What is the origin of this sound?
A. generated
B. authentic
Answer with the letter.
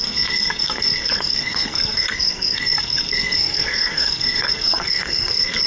A